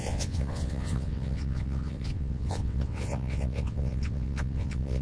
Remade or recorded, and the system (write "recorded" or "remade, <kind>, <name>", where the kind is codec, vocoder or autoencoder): remade, vocoder, WaveNeXt